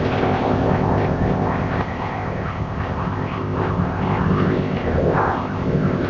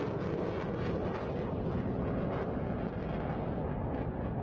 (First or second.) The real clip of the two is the second